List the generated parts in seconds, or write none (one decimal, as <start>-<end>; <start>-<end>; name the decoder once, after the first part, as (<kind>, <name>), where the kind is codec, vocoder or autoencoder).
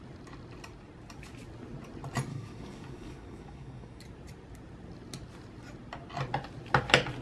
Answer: 2.3-4.0 (codec, DAC)